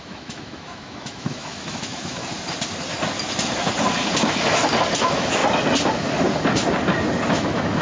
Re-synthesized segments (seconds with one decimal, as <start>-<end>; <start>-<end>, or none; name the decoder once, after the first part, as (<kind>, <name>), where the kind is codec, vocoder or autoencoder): 0.0-2.2 (autoencoder, DAC-VAE); 5.0-5.4; 7.3-7.8